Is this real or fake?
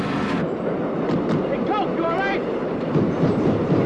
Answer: real